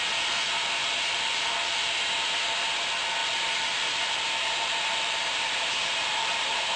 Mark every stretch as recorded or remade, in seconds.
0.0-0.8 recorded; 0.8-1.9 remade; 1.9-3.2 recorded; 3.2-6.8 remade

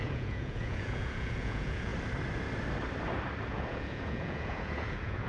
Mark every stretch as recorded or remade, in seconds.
0.0-1.9 remade; 1.9-3.5 recorded; 3.5-5.3 remade